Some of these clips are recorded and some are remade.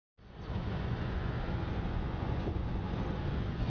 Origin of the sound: remade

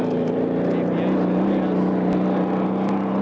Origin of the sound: recorded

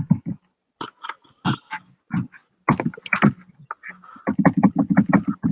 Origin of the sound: recorded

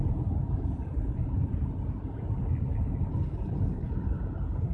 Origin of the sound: recorded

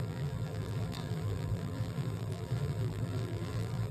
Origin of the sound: remade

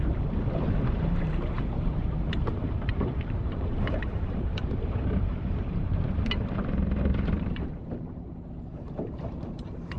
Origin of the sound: remade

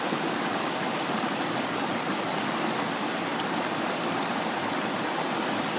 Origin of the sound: recorded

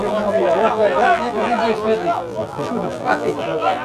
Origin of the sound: remade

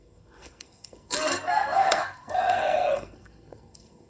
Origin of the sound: remade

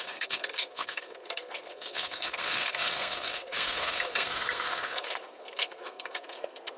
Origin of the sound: remade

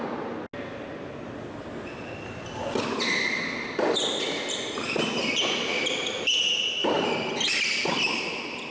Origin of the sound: recorded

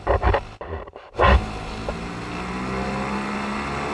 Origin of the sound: recorded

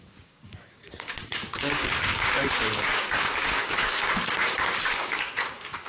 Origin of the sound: remade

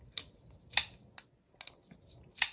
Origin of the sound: recorded